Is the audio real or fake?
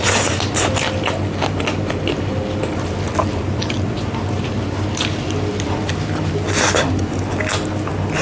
real